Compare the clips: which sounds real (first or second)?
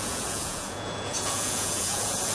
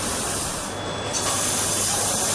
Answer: second